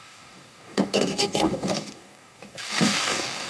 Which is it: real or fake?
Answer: fake